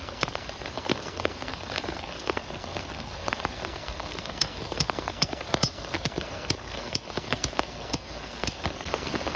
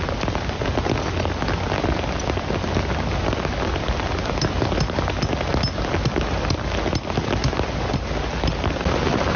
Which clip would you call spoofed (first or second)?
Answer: first